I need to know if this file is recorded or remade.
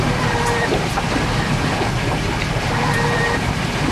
remade